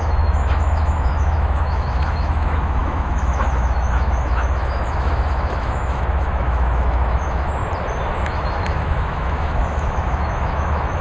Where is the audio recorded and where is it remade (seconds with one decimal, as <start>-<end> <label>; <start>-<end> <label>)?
0.0-7.6 remade; 7.6-8.2 recorded; 8.2-11.0 remade